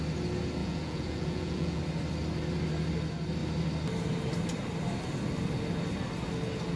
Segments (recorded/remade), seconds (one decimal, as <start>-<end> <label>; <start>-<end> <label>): 0.0-0.6 recorded; 0.6-1.8 remade; 1.8-6.8 recorded